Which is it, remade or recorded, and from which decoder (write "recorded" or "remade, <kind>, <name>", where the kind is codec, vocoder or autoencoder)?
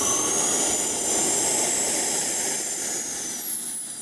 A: remade, vocoder, BigVGAN v2